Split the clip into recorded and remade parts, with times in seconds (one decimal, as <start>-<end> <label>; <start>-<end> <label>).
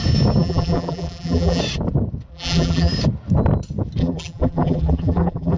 0.0-0.4 recorded; 0.4-1.6 remade; 1.6-2.3 recorded; 2.3-2.9 remade; 2.9-4.0 recorded; 4.0-5.6 remade